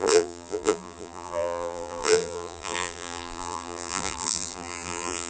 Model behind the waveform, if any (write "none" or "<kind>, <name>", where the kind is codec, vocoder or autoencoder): vocoder, BigVGAN v2